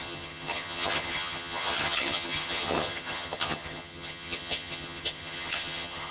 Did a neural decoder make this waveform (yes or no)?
yes